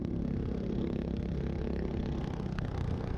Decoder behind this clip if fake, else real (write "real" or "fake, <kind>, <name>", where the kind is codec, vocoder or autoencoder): fake, codec, SNAC